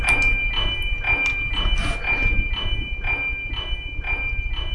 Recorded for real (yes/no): yes